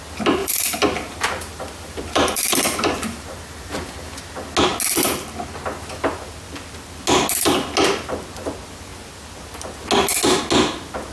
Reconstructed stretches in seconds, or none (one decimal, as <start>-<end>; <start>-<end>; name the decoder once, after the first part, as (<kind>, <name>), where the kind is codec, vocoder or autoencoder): 0.4-4.2 (vocoder, BigVGAN v2)